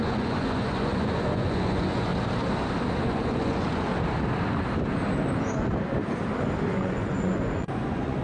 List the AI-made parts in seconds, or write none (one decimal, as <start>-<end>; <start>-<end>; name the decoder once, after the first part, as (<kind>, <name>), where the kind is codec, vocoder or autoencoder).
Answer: 0.0-2.1 (vocoder, Vocos); 3.0-3.9; 6.7-8.2